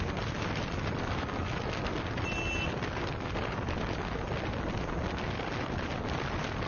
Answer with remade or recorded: recorded